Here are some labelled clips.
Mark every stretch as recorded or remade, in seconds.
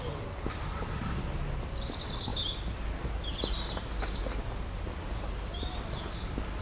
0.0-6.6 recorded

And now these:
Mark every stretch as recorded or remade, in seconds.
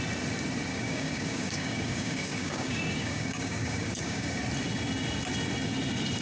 0.0-0.7 recorded; 0.7-4.4 remade; 4.4-6.2 recorded